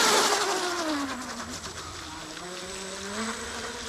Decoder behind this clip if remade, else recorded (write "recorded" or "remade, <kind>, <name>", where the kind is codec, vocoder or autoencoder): recorded